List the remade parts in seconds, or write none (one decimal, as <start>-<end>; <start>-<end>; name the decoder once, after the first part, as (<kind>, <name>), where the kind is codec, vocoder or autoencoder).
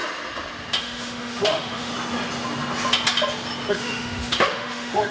0.8-1.9 (autoencoder, DAC-VAE); 3.7-5.1